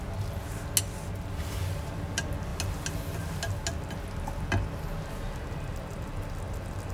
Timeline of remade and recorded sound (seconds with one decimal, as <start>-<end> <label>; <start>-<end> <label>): 0.0-6.9 recorded